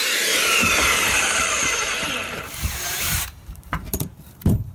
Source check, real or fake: fake